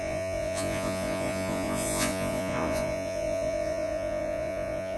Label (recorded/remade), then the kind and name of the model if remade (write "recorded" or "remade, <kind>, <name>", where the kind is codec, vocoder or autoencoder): remade, vocoder, Vocos